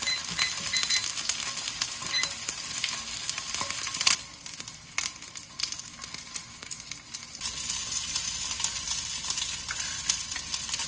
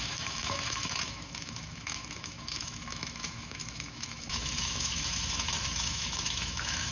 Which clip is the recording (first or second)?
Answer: first